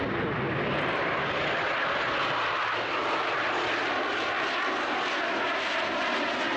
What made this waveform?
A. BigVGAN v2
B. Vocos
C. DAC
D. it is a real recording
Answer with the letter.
D